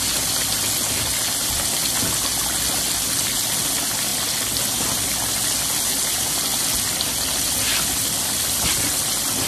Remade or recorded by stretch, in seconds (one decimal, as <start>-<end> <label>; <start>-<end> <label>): 0.0-9.5 recorded